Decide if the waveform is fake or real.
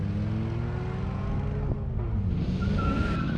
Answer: real